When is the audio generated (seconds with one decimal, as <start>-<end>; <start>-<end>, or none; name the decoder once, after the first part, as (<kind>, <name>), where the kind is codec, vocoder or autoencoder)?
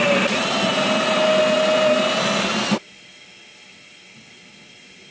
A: none